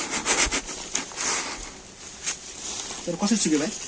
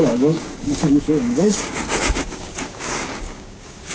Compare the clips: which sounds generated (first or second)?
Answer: second